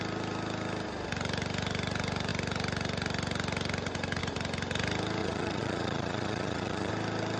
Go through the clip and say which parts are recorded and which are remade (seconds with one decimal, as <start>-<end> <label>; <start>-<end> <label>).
0.0-5.2 recorded; 5.2-6.9 remade; 6.9-7.4 recorded